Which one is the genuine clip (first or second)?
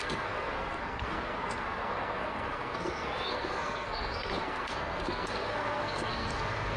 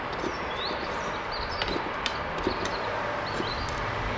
second